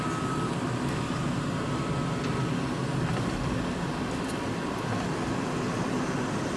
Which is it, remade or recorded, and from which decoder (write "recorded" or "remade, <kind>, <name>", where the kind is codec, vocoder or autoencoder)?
recorded